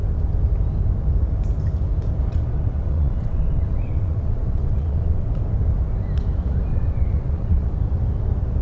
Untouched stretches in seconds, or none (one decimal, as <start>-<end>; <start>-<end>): 0.0-2.3; 5.4-6.7; 7.7-8.6